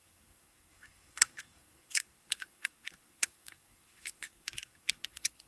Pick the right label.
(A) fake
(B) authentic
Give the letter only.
A